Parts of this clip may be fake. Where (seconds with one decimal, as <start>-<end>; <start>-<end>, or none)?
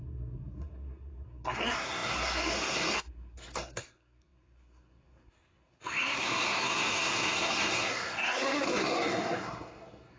0.0-10.2